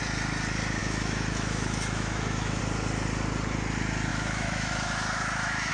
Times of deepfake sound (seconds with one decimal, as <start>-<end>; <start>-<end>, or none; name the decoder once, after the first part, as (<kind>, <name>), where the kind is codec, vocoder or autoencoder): 0.8-2.6 (autoencoder, DAC-VAE); 4.1-5.7